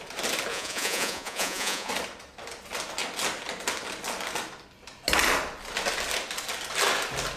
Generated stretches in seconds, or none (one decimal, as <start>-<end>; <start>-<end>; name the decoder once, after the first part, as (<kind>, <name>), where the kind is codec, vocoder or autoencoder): 0.5-1.9 (vocoder, Vocos)